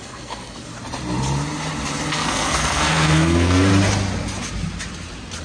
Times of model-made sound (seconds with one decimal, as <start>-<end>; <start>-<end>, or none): 0.0-0.7; 2.1-3.7